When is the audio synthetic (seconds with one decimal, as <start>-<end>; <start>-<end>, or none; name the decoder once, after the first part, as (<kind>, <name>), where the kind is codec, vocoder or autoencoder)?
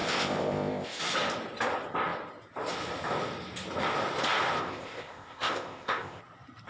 0.0-1.0 (codec, ZipCodec); 4.6-6.2